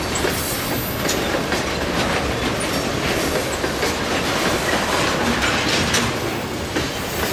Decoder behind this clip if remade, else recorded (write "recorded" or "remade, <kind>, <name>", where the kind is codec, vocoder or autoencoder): recorded